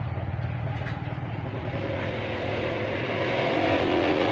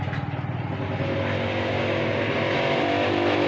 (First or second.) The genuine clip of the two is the second